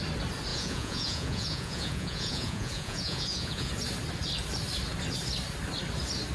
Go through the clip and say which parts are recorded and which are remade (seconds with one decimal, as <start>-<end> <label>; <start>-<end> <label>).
0.0-0.5 recorded; 0.5-3.7 remade; 3.7-6.3 recorded